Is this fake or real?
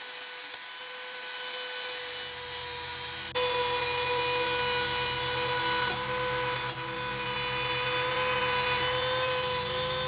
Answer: real